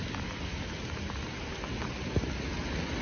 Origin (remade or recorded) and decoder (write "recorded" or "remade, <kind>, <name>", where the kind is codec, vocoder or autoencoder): recorded